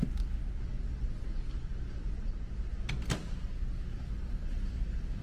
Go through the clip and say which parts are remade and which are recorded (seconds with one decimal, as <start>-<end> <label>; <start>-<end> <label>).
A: 0.0-5.2 recorded